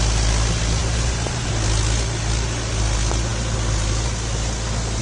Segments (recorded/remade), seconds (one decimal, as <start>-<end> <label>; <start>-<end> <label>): 0.0-0.8 recorded; 0.8-1.5 remade; 1.5-5.0 recorded